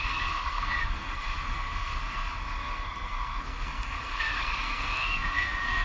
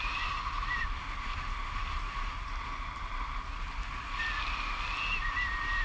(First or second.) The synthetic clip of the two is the first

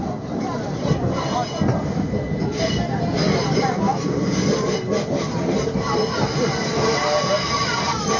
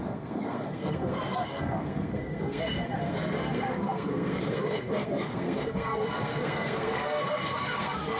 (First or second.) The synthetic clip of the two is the second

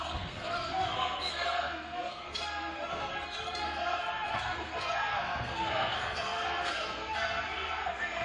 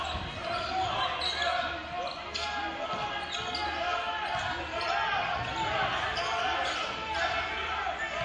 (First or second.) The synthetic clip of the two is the first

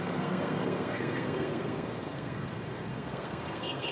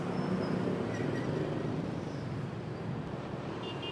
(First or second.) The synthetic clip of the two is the first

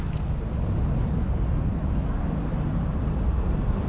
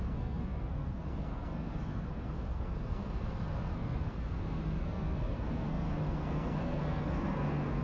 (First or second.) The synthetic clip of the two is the second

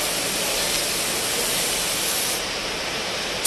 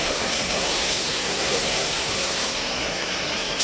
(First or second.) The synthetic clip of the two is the second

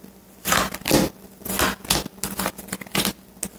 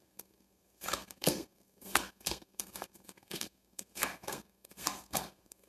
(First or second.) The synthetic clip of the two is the second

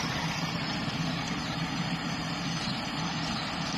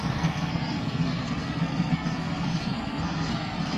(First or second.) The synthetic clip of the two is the second